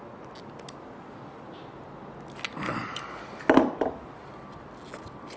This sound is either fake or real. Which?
real